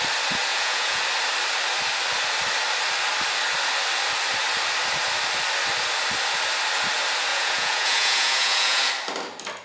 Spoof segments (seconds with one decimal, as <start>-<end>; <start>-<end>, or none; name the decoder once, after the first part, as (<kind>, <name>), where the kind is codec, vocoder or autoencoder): 0.5-1.0 (vocoder, Vocos); 7.3-8.9